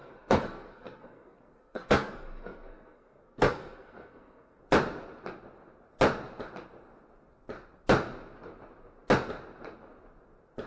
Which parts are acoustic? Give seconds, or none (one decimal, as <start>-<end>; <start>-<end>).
4.6-10.7